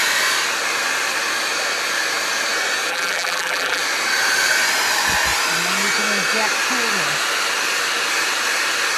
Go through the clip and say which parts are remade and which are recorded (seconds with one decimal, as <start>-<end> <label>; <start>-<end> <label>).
0.0-2.9 recorded; 2.9-3.8 remade; 3.8-9.0 recorded